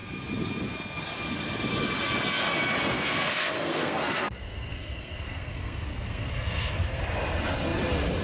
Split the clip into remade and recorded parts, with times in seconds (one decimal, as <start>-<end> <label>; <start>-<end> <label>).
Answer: 0.0-2.9 recorded; 2.9-7.0 remade; 7.0-8.2 recorded

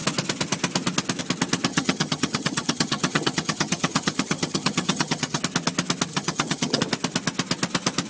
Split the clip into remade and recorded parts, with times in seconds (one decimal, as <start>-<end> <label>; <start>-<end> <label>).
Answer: 0.0-1.7 recorded; 1.7-5.4 remade; 5.4-6.1 recorded; 6.1-6.8 remade; 6.8-8.1 recorded